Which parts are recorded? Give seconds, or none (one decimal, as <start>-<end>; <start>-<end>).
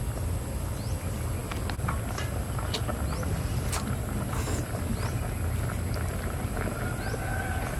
0.0-7.8